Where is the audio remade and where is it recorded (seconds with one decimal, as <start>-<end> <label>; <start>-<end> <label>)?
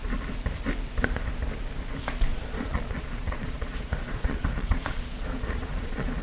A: 0.0-2.3 recorded; 2.3-6.2 remade